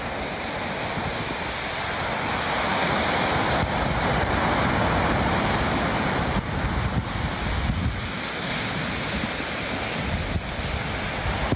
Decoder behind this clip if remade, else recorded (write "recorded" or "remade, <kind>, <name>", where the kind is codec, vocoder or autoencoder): recorded